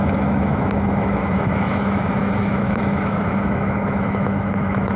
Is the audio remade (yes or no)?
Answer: yes